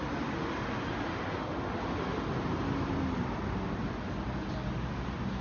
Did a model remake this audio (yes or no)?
no